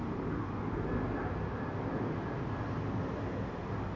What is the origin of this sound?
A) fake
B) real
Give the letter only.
B